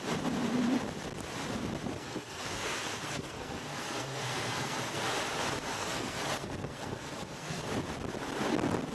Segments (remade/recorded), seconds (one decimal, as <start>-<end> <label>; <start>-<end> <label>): 0.0-1.9 recorded; 1.9-5.1 remade; 5.1-5.7 recorded; 5.7-7.7 remade; 7.7-8.9 recorded